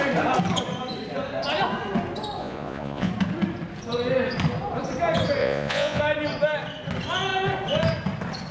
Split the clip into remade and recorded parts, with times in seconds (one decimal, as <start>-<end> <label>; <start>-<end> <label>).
0.0-2.4 recorded; 2.4-3.1 remade; 3.1-5.4 recorded; 5.4-6.0 remade; 6.0-8.5 recorded